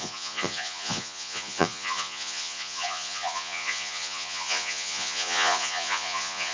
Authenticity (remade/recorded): remade